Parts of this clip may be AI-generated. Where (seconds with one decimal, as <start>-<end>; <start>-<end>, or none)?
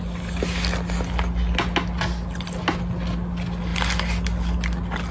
none